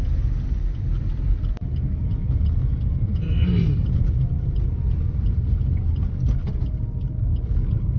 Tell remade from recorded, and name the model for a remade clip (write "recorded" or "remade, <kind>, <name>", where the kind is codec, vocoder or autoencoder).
recorded